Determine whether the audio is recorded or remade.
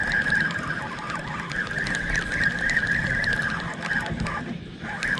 recorded